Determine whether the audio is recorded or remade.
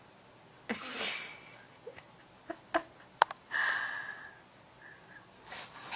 recorded